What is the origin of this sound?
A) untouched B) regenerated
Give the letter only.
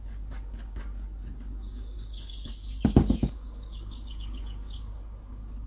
B